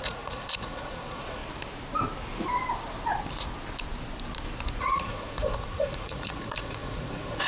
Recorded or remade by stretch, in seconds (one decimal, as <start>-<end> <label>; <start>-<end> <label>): 0.0-1.4 remade; 1.4-4.8 recorded; 4.8-7.5 remade